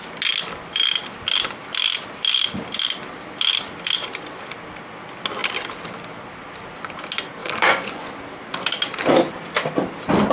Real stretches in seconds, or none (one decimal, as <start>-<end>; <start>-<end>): 0.0-7.4; 8.1-10.3